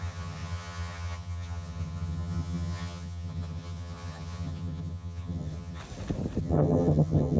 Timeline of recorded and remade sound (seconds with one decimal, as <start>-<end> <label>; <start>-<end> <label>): 0.0-5.8 remade; 5.8-6.4 recorded; 6.4-7.4 remade